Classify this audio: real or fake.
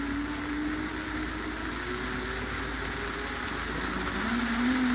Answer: real